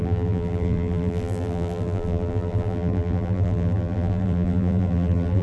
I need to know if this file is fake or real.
fake